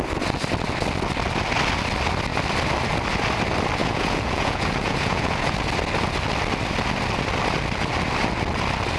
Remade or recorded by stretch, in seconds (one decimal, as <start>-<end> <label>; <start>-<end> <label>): 0.0-3.8 recorded; 3.8-5.5 remade; 5.5-9.0 recorded